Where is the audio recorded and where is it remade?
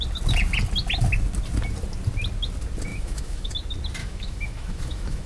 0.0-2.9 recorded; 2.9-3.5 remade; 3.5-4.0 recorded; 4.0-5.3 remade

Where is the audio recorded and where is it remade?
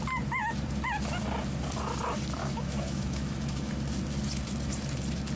0.0-2.4 recorded; 2.4-3.7 remade; 3.7-5.4 recorded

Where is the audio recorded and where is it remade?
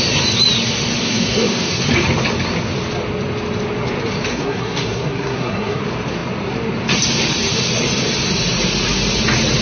0.0-1.0 recorded; 1.0-1.8 remade; 1.8-4.3 recorded; 4.3-5.8 remade; 5.8-9.6 recorded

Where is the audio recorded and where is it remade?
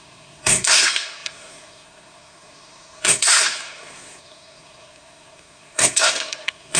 0.0-6.8 remade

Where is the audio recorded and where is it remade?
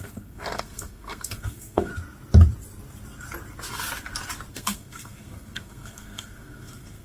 0.0-1.9 remade; 1.9-4.5 recorded; 4.5-7.0 remade